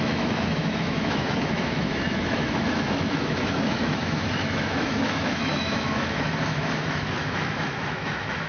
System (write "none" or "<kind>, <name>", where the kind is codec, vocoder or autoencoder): autoencoder, DAC-VAE